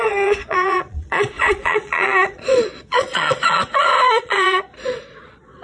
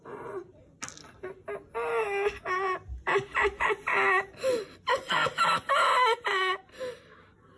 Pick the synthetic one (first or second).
first